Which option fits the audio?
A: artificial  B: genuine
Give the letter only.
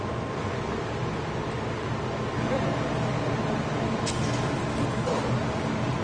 B